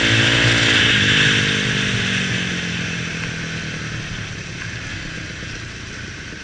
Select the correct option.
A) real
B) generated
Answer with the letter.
A